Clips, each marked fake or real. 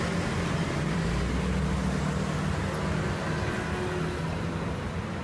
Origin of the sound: real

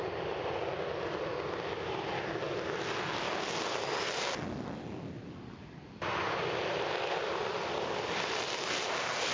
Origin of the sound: real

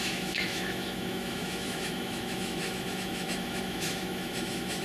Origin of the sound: fake